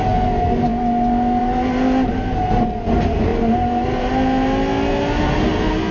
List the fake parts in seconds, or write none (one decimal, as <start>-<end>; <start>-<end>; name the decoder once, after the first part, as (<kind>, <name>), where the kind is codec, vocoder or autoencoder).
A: none